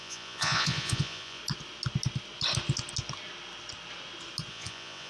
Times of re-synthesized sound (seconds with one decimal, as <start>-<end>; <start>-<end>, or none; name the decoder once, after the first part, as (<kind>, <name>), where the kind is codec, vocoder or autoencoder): 0.0-1.4 (vocoder, Vocos); 4.5-5.1